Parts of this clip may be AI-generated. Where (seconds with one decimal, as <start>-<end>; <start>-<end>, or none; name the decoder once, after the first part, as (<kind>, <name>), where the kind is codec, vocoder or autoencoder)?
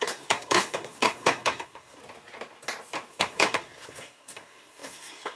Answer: 0.0-2.0 (codec, SNAC); 3.1-5.4